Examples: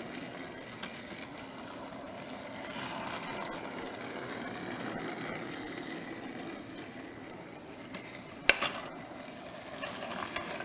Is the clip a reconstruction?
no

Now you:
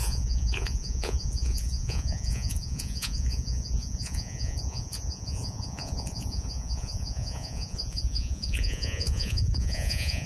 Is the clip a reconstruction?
yes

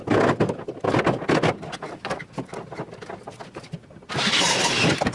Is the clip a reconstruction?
no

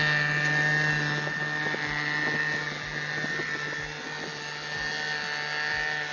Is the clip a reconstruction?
no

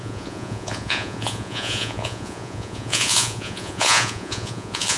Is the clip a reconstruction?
yes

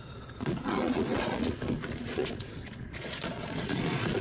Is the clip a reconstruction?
yes